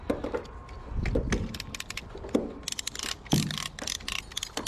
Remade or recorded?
recorded